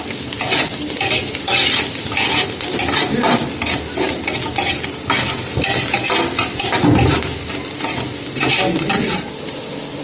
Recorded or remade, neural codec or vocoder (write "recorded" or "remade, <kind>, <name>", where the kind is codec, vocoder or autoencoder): recorded